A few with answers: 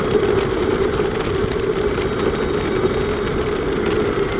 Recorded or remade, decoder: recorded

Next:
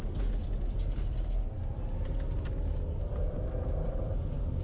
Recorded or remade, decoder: recorded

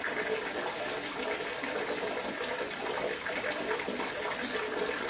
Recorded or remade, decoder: remade, vocoder, BigVGAN v2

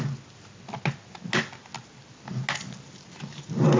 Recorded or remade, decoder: recorded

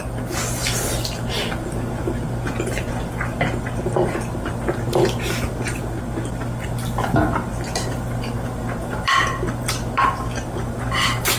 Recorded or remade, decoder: recorded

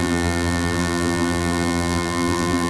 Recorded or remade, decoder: remade, vocoder, BigVGAN v2